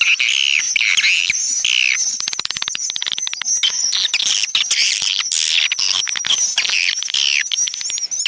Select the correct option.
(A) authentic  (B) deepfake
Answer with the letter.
A